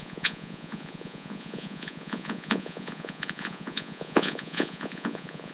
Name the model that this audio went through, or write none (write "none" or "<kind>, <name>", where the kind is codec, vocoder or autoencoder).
vocoder, Vocos